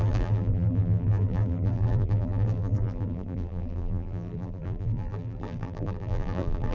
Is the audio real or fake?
fake